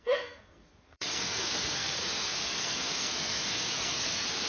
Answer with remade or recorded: remade